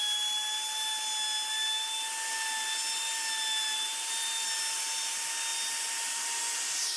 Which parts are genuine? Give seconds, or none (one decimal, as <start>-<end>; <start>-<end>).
0.0-7.0